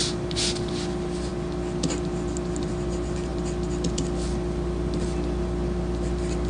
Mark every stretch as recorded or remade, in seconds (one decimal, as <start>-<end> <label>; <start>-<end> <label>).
0.0-6.5 recorded

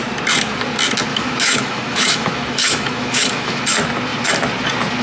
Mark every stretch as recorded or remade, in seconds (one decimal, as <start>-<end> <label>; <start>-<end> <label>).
0.0-1.1 recorded; 1.1-3.6 remade; 3.6-5.0 recorded